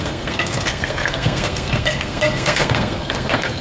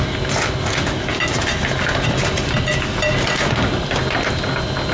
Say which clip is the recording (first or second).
second